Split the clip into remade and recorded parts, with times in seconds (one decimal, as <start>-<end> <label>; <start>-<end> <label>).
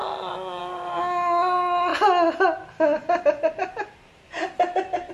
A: 0.0-5.1 recorded